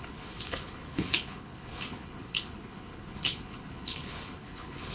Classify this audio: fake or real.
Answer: fake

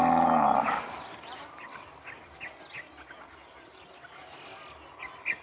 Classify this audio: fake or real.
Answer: real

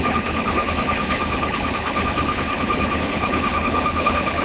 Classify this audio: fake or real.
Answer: fake